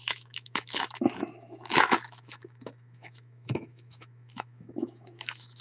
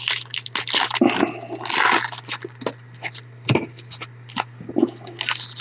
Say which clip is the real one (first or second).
second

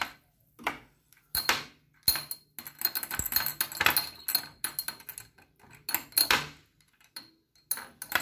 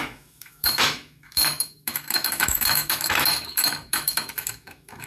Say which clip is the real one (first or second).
first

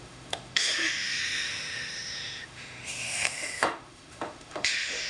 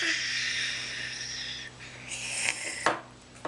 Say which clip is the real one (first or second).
second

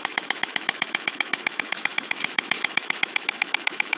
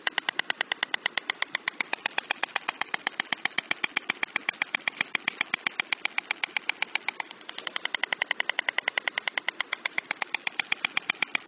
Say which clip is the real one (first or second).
second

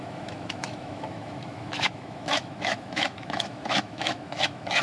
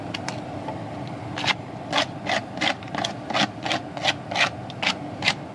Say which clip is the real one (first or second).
second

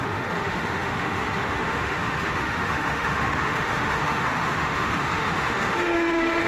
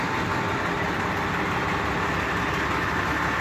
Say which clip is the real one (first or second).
second